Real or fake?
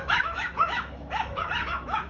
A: fake